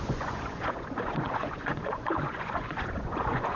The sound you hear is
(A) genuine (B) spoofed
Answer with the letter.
B